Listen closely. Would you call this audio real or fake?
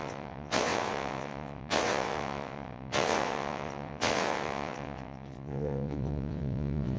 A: fake